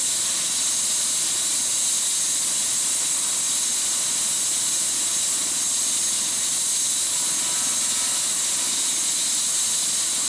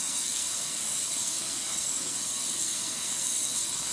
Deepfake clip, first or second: second